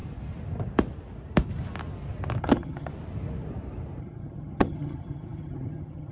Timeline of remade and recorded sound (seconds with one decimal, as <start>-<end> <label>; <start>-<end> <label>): 0.0-2.4 recorded; 2.4-2.9 remade; 2.9-4.0 recorded; 4.0-6.1 remade